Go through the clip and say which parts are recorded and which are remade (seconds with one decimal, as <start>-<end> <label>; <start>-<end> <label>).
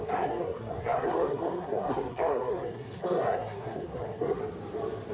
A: 0.0-4.4 remade; 4.4-5.1 recorded